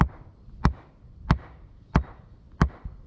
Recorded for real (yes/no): yes